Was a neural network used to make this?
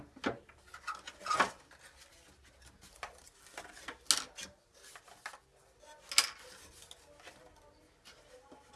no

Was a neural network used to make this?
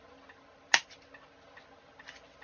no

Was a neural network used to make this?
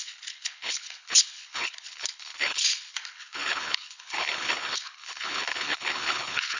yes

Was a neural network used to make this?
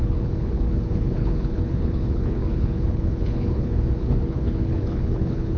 yes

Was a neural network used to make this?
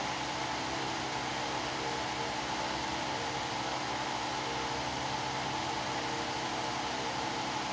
no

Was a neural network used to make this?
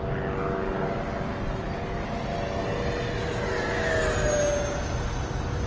no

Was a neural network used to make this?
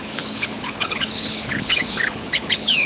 yes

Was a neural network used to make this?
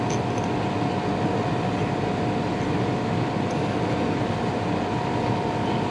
no